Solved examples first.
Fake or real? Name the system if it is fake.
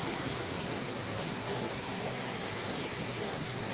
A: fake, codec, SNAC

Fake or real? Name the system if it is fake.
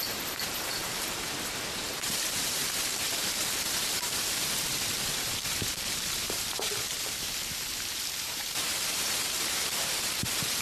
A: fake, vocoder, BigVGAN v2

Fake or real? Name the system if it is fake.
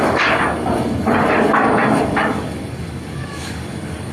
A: fake, codec, DAC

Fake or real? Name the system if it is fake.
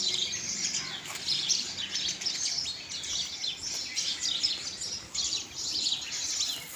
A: real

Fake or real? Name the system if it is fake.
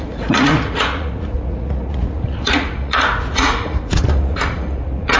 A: fake, vocoder, Vocos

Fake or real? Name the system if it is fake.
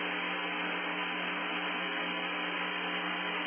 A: real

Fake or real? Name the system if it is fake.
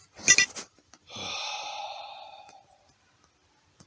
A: real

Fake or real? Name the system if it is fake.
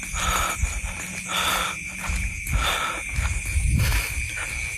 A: real